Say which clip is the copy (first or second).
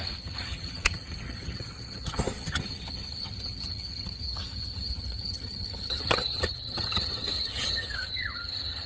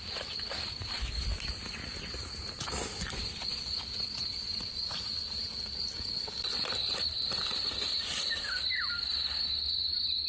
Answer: first